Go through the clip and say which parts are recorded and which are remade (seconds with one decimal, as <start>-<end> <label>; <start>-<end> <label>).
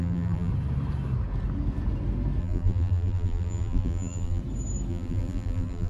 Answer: 0.0-0.5 remade; 0.5-2.4 recorded; 2.4-4.4 remade; 4.4-4.9 recorded; 4.9-5.9 remade